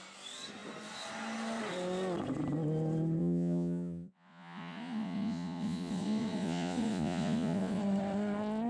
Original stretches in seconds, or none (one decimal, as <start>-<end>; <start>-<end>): 0.0-3.2; 7.8-8.7